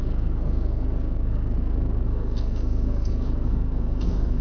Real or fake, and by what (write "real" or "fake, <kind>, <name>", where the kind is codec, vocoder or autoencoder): fake, codec, SNAC